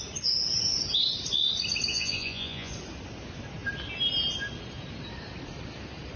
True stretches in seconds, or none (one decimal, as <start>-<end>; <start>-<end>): 0.0-1.9; 2.7-6.2